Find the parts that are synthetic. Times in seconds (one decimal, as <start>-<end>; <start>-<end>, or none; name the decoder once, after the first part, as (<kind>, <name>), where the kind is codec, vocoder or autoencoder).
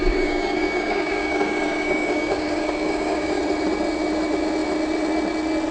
0.0-3.4 (codec, DAC)